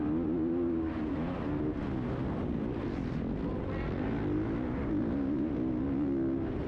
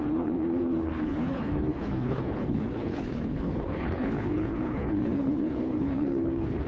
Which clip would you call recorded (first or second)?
first